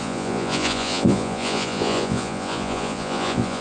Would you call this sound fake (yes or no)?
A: yes